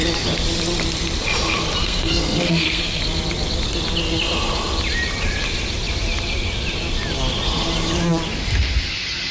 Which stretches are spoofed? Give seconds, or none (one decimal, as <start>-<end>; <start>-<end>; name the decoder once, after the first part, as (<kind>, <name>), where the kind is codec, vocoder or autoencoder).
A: 1.8-3.0 (codec, SNAC)